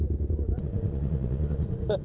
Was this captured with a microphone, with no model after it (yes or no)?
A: no